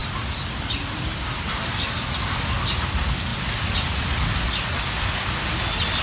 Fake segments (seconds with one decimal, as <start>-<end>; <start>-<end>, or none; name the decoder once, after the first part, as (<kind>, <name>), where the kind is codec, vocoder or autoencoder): 0.0-2.1 (vocoder, BigVGAN v2)